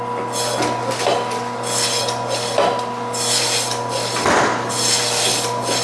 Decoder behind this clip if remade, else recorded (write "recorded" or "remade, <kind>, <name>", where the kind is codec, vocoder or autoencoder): recorded